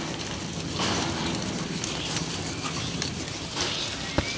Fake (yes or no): no